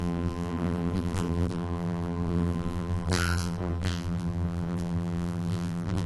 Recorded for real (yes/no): no